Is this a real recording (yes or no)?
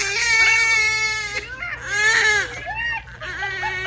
yes